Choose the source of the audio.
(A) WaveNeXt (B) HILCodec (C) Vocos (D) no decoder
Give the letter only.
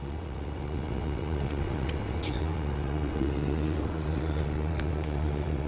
A